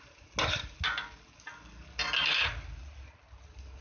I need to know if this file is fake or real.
real